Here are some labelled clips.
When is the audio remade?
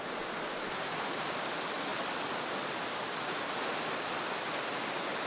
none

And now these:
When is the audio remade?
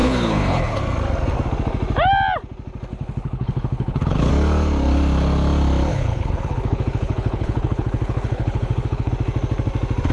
0.0-0.8 (codec, HILCodec); 2.9-4.3; 5.9-9.1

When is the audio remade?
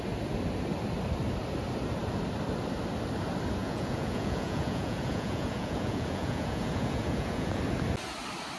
3.6-7.6 (vocoder, Vocos)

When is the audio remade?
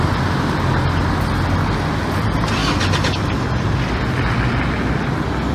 none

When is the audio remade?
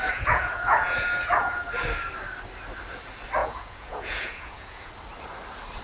0.0-1.7 (vocoder, Vocos); 3.4-4.9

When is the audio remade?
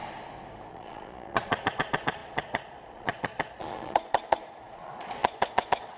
0.7-6.0 (vocoder, Vocos)